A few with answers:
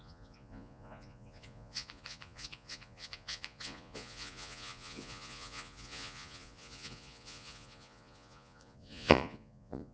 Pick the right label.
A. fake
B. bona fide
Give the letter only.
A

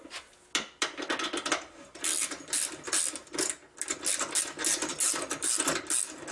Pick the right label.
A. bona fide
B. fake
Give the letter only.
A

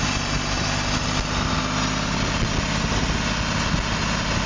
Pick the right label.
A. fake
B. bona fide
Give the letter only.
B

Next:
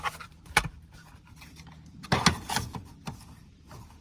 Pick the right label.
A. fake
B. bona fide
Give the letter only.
A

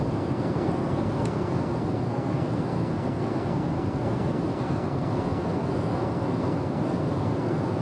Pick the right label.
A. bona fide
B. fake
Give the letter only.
B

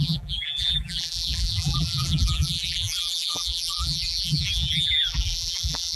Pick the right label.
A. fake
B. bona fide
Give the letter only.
A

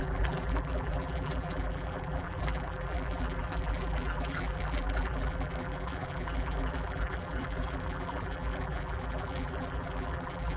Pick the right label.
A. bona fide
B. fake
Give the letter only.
B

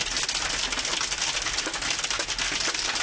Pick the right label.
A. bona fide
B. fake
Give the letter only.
A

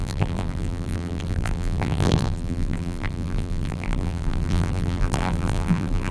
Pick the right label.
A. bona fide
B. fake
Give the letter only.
B